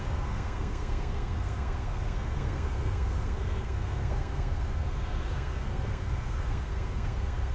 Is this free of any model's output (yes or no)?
no